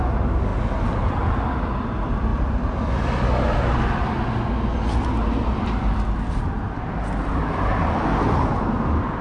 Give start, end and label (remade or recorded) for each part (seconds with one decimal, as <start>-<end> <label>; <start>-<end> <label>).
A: 0.0-2.3 recorded; 2.3-3.3 remade; 3.3-9.2 recorded